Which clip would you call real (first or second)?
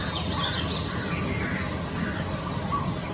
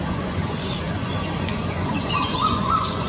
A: first